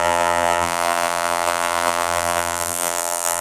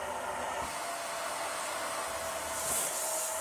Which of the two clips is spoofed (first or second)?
first